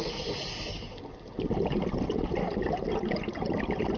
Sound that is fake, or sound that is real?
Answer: real